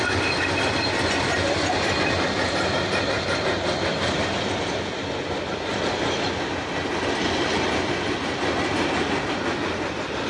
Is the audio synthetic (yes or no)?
no